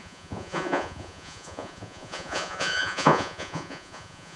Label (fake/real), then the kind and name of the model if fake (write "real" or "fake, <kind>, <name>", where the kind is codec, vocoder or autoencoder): fake, vocoder, Vocos